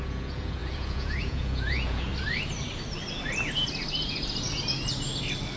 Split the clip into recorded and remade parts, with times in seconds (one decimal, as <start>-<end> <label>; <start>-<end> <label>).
0.0-2.1 remade; 2.1-5.6 recorded